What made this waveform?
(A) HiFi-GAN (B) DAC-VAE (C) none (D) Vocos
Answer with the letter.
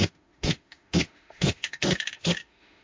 B